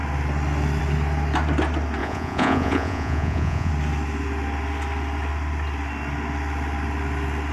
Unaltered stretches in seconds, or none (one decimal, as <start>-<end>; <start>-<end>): 0.0-2.0; 3.7-7.5